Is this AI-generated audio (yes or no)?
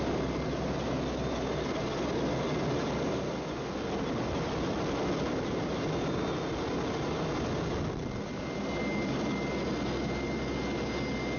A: no